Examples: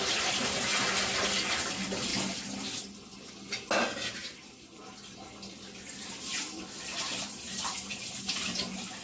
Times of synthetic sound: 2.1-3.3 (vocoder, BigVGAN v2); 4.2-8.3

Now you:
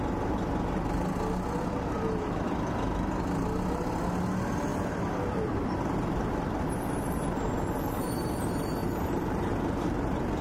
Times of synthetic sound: 4.7-8.0 (vocoder, BigVGAN v2); 8.8-10.4

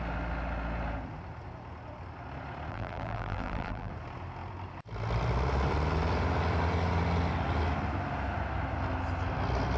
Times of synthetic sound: 2.7-3.9 (vocoder, BigVGAN v2)